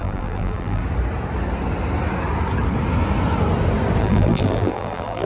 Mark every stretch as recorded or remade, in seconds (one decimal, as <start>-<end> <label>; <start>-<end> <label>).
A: 0.0-0.8 remade; 0.8-4.0 recorded; 4.0-5.3 remade